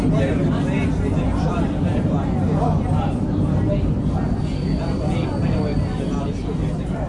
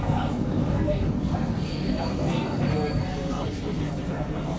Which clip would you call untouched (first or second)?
first